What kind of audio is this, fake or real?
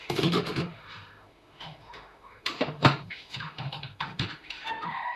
fake